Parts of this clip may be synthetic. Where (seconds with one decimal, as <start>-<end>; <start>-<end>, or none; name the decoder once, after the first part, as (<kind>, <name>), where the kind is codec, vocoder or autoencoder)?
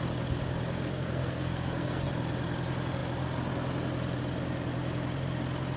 0.9-2.1 (codec, SNAC)